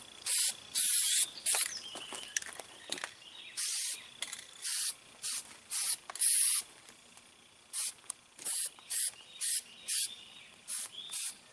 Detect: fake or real real